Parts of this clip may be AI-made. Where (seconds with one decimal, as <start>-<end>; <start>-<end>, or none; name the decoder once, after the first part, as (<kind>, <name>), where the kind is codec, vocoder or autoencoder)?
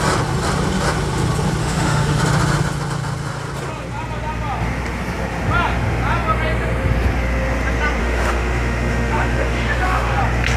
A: 1.6-2.2 (autoencoder, DAC-VAE); 8.0-10.2